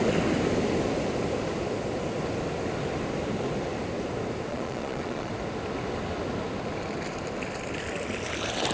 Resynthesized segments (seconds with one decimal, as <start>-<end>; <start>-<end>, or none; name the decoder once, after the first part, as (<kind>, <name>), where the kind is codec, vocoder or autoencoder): 4.5-5.3 (vocoder, Vocos)